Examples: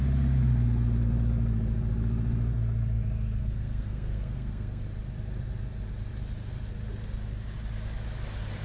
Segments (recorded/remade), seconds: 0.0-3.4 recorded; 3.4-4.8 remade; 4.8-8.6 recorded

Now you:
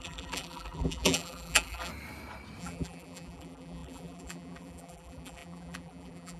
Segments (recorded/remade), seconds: 0.0-1.9 remade; 1.9-2.6 recorded; 2.6-6.4 remade

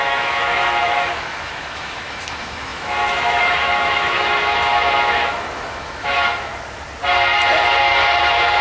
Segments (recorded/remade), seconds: 0.0-6.5 remade; 6.5-8.2 recorded; 8.2-8.6 remade

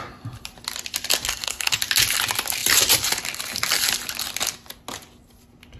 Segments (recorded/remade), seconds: 0.0-1.3 recorded; 1.3-1.8 remade; 1.8-5.8 recorded

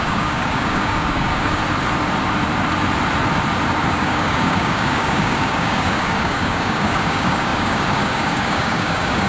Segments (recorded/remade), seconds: 0.0-1.6 remade; 1.6-3.9 recorded; 3.9-9.3 remade